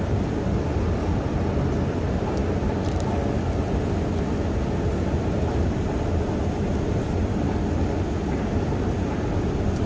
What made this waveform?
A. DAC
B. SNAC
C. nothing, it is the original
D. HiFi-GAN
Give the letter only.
C